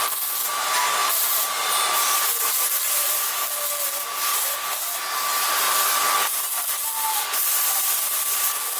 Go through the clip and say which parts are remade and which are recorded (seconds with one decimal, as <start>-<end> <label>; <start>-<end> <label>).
0.0-1.0 recorded; 1.0-3.3 remade; 3.3-4.0 recorded; 4.0-4.6 remade; 4.6-8.8 recorded